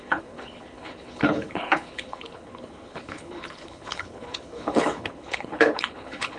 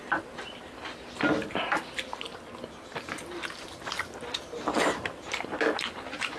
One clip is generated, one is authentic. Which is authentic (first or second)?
second